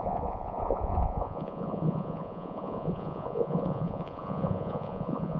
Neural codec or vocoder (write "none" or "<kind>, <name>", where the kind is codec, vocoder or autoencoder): vocoder, Vocos